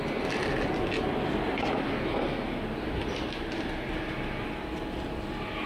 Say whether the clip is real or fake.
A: real